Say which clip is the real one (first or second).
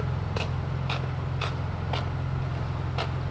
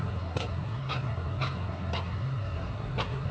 first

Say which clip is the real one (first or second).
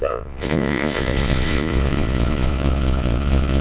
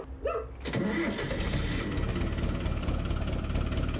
second